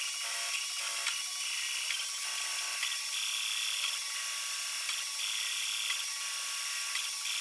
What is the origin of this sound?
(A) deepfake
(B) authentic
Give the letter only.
B